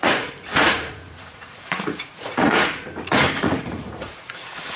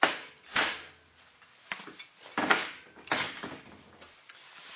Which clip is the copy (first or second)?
first